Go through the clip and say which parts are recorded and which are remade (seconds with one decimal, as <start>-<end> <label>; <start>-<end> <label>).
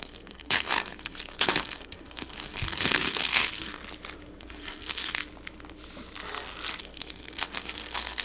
0.0-3.8 remade; 3.8-4.4 recorded; 4.4-5.2 remade; 5.2-6.8 recorded; 6.8-8.2 remade